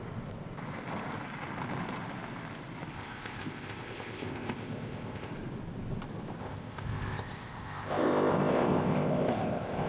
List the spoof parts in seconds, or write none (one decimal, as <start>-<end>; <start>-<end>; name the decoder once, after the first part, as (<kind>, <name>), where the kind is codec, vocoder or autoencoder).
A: 2.9-5.3 (codec, ZipCodec); 6.4-9.9